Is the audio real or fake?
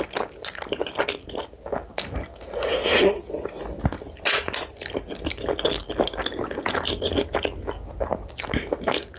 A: real